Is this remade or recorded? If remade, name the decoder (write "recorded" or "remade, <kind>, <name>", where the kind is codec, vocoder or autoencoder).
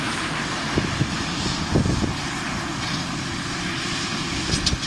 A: recorded